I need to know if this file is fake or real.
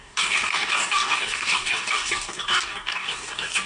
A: fake